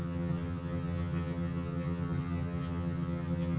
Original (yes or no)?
no